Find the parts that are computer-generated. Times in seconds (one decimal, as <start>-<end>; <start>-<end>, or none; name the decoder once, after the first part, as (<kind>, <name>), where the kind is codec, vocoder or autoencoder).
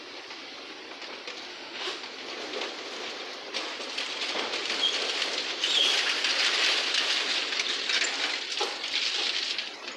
1.5-2.0 (autoencoder, DAC-VAE)